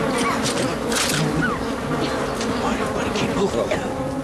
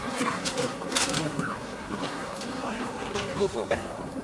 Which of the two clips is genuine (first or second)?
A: first